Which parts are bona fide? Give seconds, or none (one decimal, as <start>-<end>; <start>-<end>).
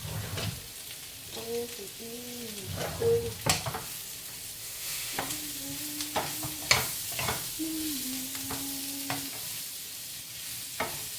0.0-4.6; 5.2-11.2